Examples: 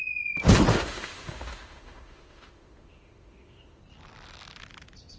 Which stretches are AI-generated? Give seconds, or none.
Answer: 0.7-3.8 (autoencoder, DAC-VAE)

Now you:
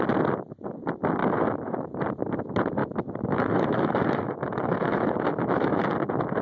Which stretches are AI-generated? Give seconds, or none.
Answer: 1.2-1.9 (autoencoder, DAC-VAE); 2.8-5.9

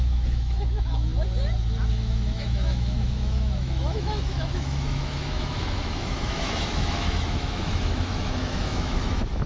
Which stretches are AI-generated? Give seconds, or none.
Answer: 0.0-1.1 (autoencoder, DAC-VAE); 1.9-9.5

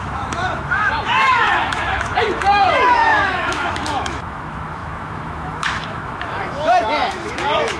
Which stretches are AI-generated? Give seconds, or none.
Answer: 0.0-7.8 (autoencoder, DAC-VAE)

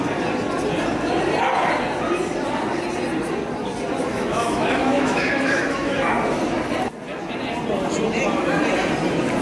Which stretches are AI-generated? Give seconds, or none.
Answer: 4.1-6.1 (autoencoder, DAC-VAE)